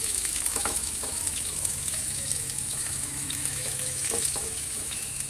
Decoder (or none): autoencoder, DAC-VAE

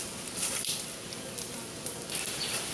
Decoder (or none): none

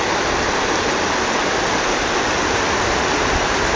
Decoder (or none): none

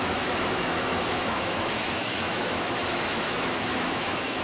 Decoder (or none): autoencoder, DAC-VAE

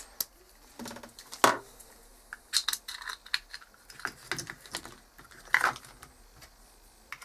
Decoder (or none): none